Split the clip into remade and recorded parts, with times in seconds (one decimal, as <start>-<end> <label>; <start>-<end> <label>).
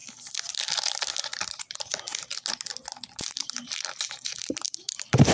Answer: 0.0-3.2 recorded; 3.2-5.3 remade